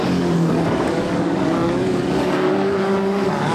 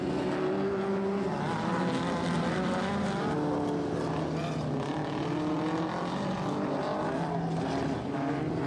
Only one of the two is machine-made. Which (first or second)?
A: first